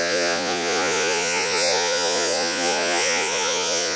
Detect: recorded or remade remade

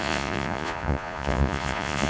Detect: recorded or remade remade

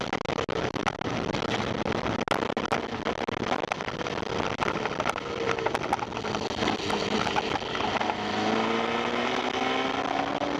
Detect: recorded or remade recorded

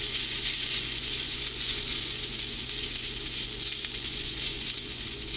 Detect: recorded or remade remade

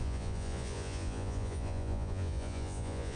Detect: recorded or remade remade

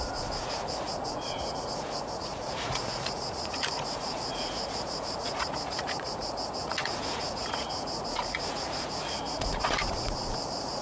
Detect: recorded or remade remade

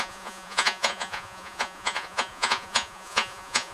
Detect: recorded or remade remade